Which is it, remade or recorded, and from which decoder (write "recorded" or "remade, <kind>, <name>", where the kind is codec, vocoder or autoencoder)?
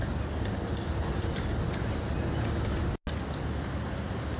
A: recorded